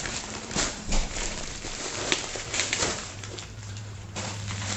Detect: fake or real fake